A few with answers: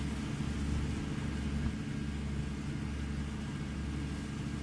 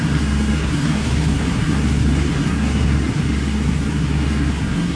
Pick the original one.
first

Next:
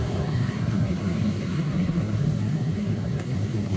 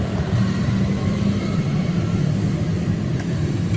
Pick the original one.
second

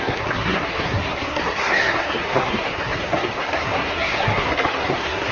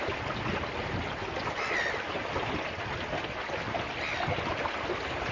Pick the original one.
second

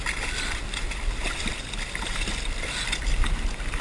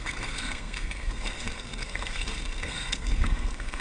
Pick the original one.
first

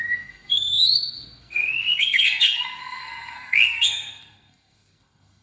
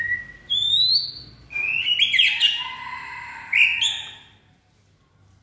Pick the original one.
second